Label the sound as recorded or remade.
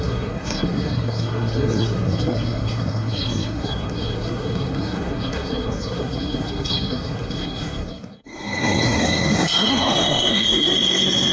remade